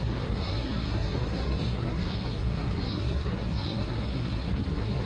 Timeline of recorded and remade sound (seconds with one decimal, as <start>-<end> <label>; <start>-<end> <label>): 0.0-5.1 remade